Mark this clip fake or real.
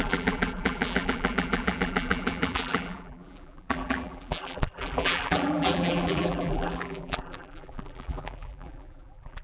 fake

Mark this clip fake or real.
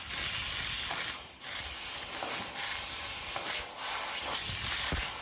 real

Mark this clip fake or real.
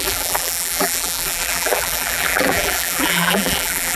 fake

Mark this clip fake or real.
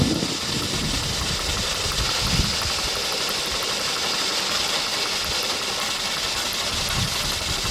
real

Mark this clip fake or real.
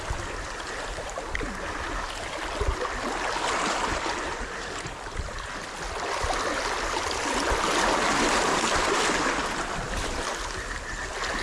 real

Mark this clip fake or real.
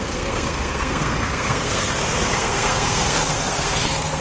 fake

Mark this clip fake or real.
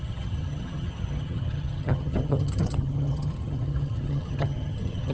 fake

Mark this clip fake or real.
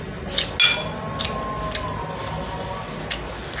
real